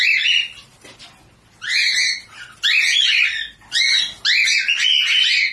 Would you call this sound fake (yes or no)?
no